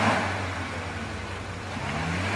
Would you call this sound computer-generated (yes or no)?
no